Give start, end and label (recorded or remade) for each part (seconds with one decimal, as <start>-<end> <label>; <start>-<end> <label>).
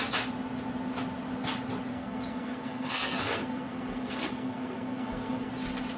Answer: 0.0-1.9 recorded; 1.9-5.5 remade; 5.5-6.0 recorded